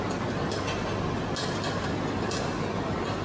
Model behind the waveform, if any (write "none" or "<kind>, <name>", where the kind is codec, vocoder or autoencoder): none